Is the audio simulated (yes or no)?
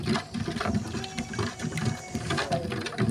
no